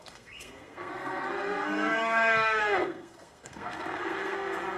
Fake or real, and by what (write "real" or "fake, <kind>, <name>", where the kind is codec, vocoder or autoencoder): fake, codec, SNAC